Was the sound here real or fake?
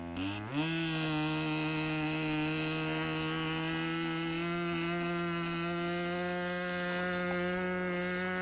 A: real